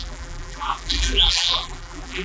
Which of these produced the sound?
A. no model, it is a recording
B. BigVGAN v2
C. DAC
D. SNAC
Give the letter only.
B